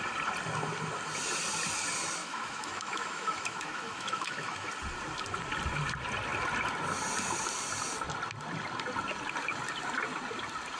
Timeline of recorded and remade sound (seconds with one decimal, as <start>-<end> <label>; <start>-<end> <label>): 0.0-2.2 recorded; 2.2-4.7 remade; 4.7-10.8 recorded